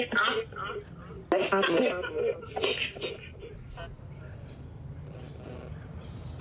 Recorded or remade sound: recorded